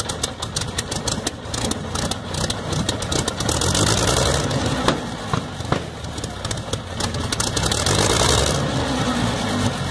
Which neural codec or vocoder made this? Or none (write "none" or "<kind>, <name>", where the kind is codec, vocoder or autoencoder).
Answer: none